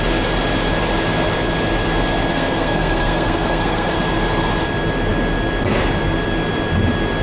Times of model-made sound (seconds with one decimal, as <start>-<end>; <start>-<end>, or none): 2.3-4.0